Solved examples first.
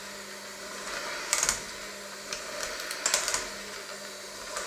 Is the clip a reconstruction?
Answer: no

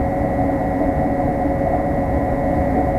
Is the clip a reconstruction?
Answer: yes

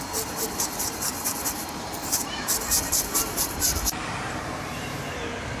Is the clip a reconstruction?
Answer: yes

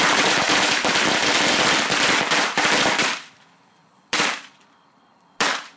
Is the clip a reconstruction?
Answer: yes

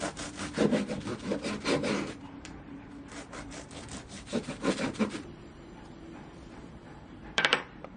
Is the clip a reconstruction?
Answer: yes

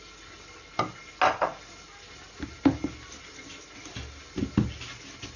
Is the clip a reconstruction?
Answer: no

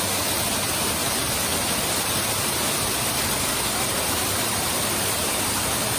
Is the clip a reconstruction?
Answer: yes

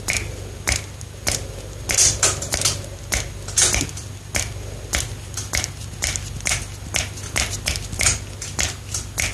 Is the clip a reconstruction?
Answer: no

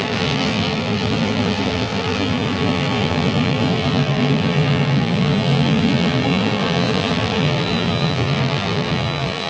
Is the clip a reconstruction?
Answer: yes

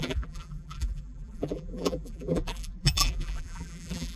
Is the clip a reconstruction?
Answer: yes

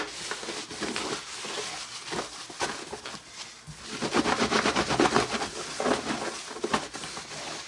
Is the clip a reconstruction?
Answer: no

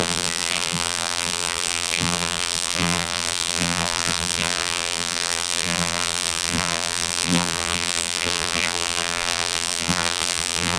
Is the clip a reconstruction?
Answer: yes